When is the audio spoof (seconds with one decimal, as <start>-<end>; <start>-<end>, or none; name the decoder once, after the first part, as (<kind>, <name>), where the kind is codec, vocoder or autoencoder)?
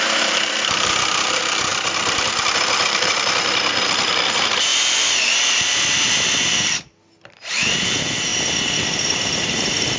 0.0-4.7 (vocoder, BigVGAN v2); 7.5-8.3; 8.9-10.0